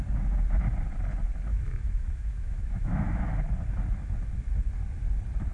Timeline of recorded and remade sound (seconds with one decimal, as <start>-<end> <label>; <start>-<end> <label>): 0.0-1.5 recorded; 1.5-3.2 remade; 3.2-5.5 recorded

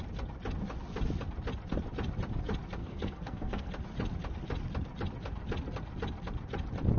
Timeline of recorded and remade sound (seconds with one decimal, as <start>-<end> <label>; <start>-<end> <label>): 0.0-2.8 recorded; 2.8-3.7 remade; 3.7-7.0 recorded

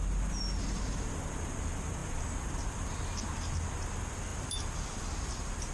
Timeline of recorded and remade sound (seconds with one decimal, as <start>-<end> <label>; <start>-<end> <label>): 0.0-4.3 recorded; 4.3-5.3 remade; 5.3-5.7 recorded

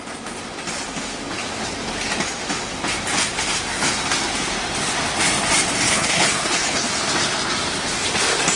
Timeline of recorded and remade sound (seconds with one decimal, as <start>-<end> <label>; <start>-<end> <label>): 0.0-5.9 recorded; 5.9-6.9 remade; 6.9-8.6 recorded

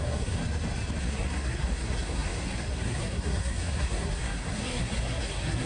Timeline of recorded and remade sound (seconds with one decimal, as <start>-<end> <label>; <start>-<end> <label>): 0.0-0.4 remade; 0.4-1.0 recorded; 1.0-5.7 remade